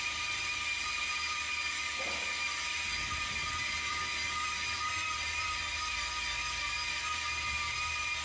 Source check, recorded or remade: recorded